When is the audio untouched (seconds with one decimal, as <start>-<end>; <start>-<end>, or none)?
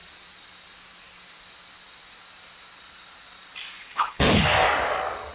0.0-3.8; 4.4-5.3